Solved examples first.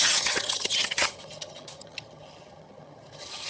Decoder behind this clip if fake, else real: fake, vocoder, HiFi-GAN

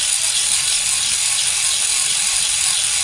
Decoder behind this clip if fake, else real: real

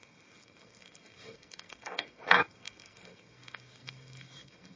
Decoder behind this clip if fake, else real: fake, codec, SNAC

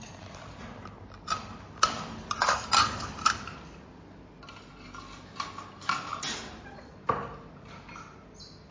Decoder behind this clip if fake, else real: real